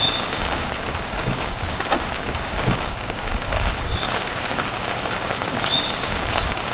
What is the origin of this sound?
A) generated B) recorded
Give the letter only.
A